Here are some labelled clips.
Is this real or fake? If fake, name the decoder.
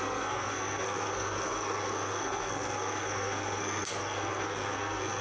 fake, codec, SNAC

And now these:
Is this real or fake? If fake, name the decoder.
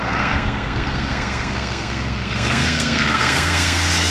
fake, codec, SNAC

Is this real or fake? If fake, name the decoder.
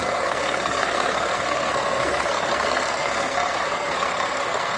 fake, codec, SNAC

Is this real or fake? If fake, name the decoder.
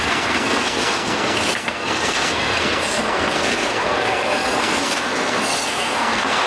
fake, codec, SNAC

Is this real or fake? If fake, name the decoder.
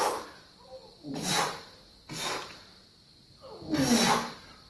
real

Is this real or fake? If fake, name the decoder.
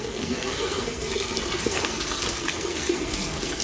fake, codec, SNAC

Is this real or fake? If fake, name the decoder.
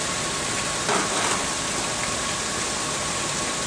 real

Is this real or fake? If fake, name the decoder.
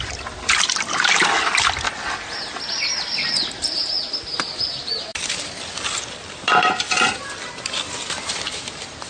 real